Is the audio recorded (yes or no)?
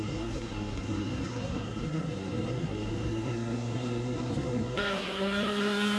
no